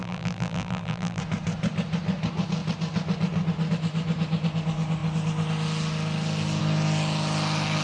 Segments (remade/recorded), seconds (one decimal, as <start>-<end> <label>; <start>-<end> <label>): 0.0-1.2 remade; 1.2-7.8 recorded